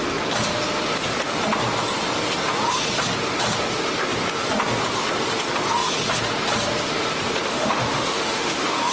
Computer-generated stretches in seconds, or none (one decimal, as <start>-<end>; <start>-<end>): 7.5-8.9

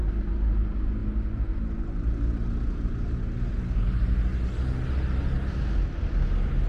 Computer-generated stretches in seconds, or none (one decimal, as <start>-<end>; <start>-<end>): none

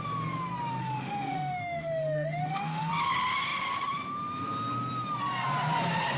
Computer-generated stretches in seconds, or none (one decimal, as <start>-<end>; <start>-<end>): 0.8-2.9

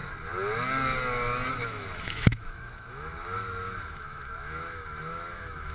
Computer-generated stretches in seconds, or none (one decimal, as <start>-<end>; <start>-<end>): 1.5-5.7

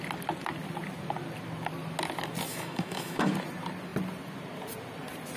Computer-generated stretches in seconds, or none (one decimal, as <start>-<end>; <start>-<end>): 2.5-3.3